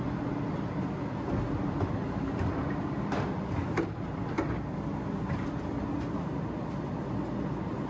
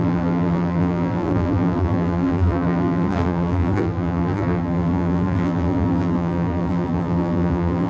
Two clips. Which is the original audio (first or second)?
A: first